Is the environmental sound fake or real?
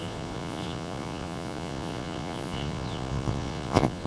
fake